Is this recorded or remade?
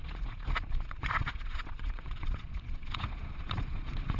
remade